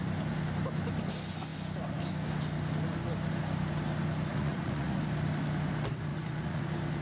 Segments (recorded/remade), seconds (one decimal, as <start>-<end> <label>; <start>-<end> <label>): 0.0-4.3 recorded; 4.3-5.0 remade; 5.0-6.1 recorded; 6.1-6.6 remade; 6.6-7.0 recorded